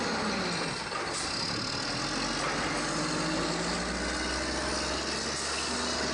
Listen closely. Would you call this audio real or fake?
real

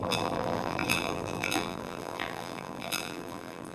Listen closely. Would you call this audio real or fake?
fake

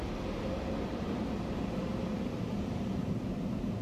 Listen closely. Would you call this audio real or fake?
fake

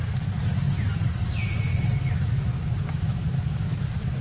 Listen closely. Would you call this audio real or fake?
real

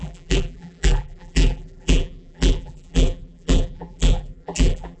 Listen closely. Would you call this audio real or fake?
fake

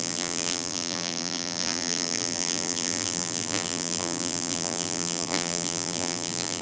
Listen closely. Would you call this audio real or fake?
fake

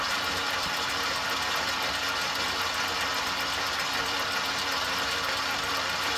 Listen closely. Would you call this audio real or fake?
fake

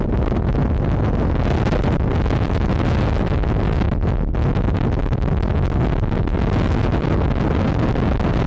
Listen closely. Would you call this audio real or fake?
real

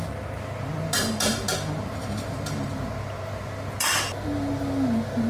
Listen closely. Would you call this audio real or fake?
real